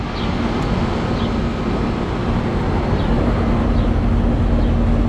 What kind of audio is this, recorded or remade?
recorded